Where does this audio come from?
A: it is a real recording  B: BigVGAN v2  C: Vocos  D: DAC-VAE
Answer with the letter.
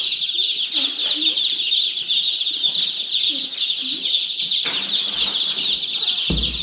A